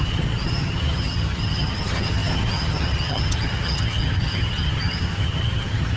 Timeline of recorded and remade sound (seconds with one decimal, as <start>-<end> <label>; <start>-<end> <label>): 0.0-6.0 remade

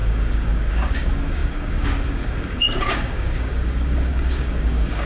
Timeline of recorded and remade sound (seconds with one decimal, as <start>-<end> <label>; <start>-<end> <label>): 0.0-5.1 remade